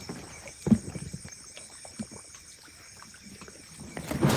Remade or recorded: recorded